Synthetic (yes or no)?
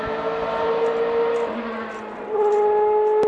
no